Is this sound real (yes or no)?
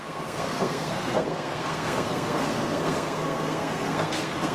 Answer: no